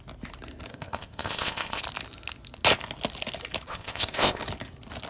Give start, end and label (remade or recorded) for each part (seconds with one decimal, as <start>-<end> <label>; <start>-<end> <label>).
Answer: 0.0-0.7 recorded; 0.7-1.8 remade; 1.8-3.7 recorded; 3.7-4.4 remade; 4.4-5.1 recorded